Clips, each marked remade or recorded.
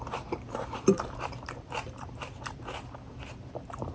remade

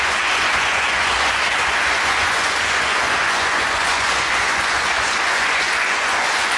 remade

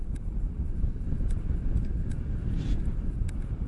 remade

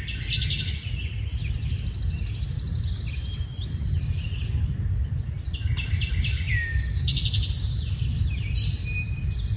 recorded